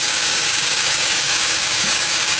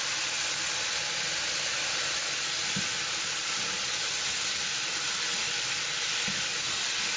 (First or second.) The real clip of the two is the second